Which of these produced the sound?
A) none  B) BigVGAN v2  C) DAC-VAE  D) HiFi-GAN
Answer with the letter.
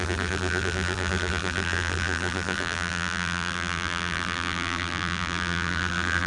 B